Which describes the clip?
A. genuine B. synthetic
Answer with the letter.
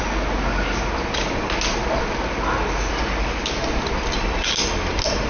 A